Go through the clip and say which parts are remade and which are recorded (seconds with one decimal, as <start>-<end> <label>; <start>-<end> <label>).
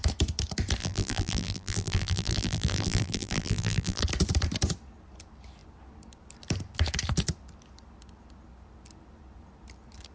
0.0-0.8 recorded; 0.8-4.0 remade; 4.0-10.1 recorded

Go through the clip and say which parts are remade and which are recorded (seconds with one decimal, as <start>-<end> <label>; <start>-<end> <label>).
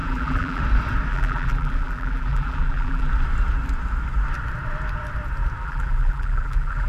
0.0-0.6 remade; 0.6-1.1 recorded; 1.1-3.1 remade; 3.1-5.6 recorded; 5.6-6.9 remade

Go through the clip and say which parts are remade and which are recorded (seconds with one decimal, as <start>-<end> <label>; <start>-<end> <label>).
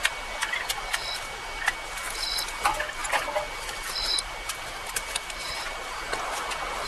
0.0-3.0 recorded; 3.0-5.7 remade; 5.7-6.9 recorded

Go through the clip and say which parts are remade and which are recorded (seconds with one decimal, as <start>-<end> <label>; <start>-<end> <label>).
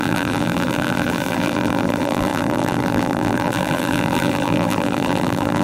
0.0-5.6 remade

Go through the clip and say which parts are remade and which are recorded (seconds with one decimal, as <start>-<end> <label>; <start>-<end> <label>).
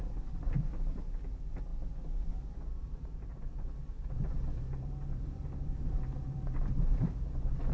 0.0-2.8 recorded; 2.8-7.7 remade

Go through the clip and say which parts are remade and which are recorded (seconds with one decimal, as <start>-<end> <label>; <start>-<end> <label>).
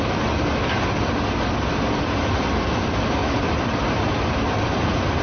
0.0-3.2 recorded; 3.2-4.6 remade; 4.6-5.2 recorded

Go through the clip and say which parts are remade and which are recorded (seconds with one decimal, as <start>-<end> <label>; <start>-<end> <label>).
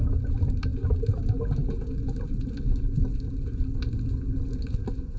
0.0-5.2 recorded